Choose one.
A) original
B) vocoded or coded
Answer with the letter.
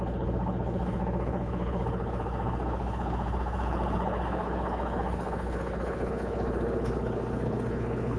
B